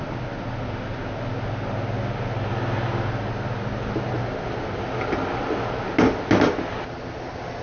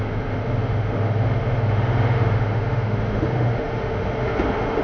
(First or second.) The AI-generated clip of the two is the second